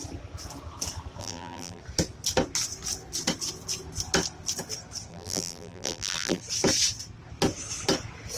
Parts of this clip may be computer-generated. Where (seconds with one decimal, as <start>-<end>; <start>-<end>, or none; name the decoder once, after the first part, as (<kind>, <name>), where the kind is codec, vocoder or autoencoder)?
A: 1.2-1.8 (vocoder, BigVGAN v2); 5.1-6.4